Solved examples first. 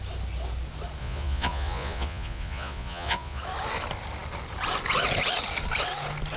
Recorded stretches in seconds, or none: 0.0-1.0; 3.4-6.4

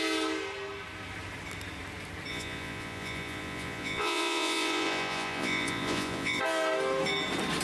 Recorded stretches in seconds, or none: 0.0-2.3; 6.4-7.6

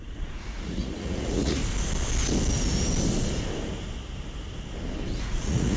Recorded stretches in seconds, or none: 1.6-5.1

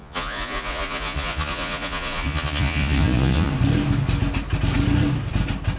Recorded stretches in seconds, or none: 3.5-5.8